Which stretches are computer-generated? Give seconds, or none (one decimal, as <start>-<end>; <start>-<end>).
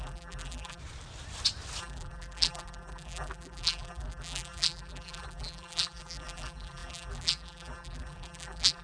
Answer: 0.0-0.8; 1.8-8.8